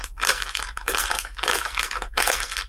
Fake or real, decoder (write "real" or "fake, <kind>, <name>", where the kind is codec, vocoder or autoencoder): fake, codec, SNAC